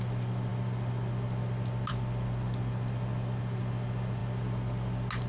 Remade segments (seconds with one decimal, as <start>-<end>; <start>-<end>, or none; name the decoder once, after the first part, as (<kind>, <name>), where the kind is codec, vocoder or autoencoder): none